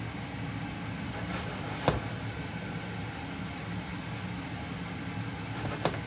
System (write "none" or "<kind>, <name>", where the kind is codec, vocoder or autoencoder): none